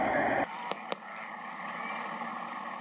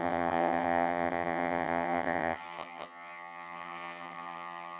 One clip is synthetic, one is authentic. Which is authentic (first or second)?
first